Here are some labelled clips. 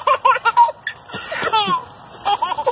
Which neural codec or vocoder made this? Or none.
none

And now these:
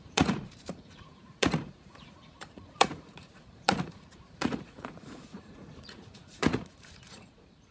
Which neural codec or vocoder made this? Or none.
vocoder, Vocos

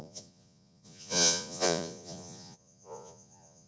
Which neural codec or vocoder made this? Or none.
vocoder, Vocos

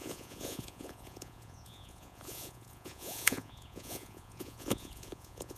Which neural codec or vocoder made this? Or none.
vocoder, Vocos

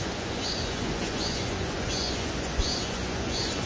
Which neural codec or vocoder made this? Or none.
vocoder, Vocos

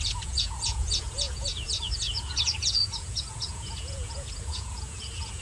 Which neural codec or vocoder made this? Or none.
vocoder, Vocos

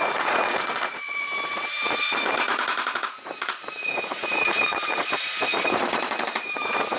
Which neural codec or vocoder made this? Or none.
vocoder, Vocos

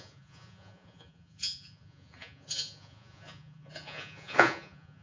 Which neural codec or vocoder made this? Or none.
vocoder, Vocos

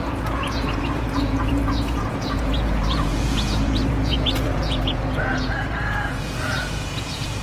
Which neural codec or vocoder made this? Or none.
vocoder, Vocos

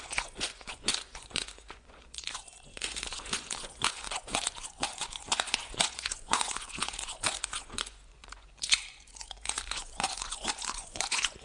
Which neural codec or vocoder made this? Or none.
vocoder, Vocos